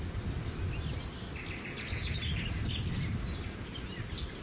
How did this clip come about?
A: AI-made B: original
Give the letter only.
B